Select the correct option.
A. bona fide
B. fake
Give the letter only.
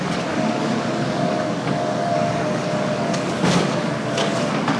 B